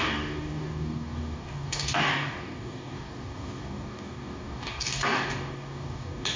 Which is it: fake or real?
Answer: fake